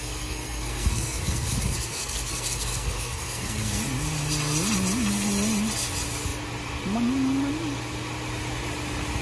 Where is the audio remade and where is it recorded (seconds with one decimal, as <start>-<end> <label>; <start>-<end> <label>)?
0.0-3.8 remade; 3.8-9.2 recorded

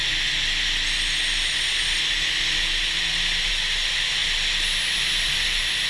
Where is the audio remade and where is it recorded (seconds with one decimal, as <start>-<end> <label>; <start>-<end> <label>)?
0.0-5.9 recorded

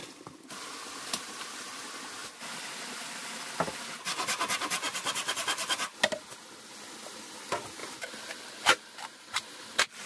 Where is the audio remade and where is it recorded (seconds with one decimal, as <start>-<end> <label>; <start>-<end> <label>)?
0.0-10.1 recorded

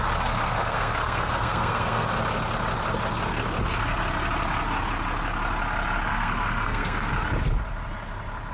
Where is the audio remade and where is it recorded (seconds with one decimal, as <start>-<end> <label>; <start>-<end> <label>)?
0.0-0.4 recorded; 0.4-2.1 remade; 2.1-6.1 recorded; 6.1-7.1 remade; 7.1-8.5 recorded

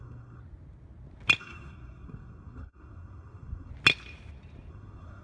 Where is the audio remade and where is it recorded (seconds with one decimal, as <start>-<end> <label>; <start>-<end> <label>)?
0.0-0.4 remade; 0.4-1.4 recorded; 1.4-3.7 remade; 3.7-4.7 recorded; 4.7-5.2 remade